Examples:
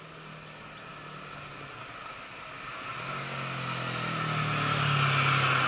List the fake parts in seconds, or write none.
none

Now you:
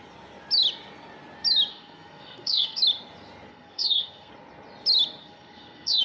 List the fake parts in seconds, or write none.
1.7-2.8 (codec, SNAC); 3.5-4.3; 5.2-6.0

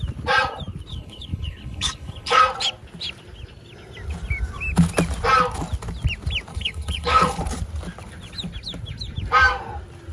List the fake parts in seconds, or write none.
0.9-2.4 (codec, HILCodec); 6.5-7.4

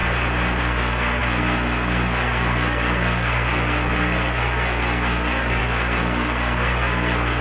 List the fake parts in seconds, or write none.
0.6-7.4 (codec, SNAC)

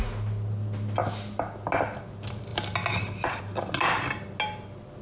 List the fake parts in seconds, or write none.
none

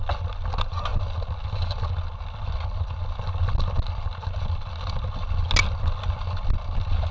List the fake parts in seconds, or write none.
none

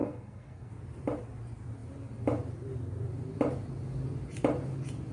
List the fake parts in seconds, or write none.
0.0-0.7 (codec, SNAC)